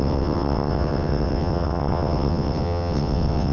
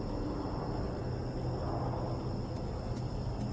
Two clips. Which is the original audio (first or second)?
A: second